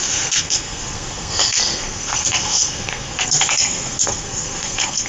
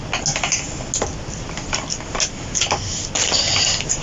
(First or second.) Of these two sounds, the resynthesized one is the first